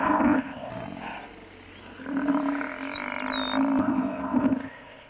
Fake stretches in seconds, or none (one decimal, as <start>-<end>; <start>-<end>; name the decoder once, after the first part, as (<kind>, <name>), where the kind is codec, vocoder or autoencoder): 0.0-0.7 (codec, ZipCodec); 3.8-5.1